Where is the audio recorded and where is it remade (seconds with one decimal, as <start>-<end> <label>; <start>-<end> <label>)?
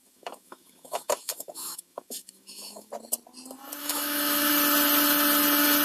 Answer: 0.0-2.9 remade; 2.9-3.8 recorded; 3.8-4.5 remade; 4.5-5.8 recorded